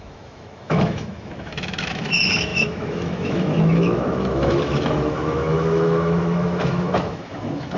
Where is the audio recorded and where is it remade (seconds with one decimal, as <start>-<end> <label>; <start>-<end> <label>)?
0.0-7.8 remade

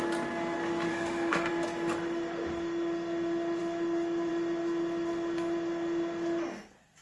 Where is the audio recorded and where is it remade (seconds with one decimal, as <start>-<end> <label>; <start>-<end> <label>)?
0.0-0.9 recorded; 0.9-1.5 remade; 1.5-7.0 recorded